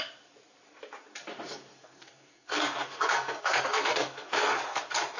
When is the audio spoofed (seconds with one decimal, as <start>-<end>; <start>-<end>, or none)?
1.7-4.8